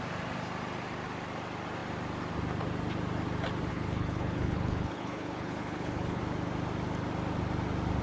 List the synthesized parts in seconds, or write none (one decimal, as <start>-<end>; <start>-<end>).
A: 3.7-6.2